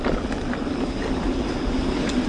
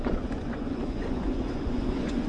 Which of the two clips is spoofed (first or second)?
second